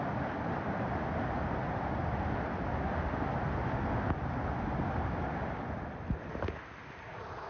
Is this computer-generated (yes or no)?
no